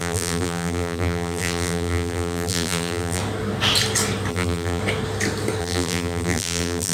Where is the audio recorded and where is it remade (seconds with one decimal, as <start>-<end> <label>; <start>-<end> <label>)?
0.0-3.2 remade; 3.2-4.3 recorded; 4.3-4.8 remade; 4.8-5.6 recorded; 5.6-6.9 remade